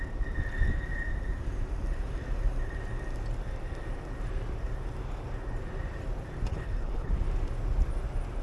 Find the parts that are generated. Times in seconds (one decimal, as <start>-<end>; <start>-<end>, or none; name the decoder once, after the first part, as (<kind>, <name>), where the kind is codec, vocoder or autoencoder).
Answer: 6.5-7.1 (codec, HILCodec)